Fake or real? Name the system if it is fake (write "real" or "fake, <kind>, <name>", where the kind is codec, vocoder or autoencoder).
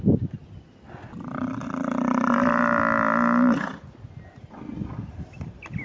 real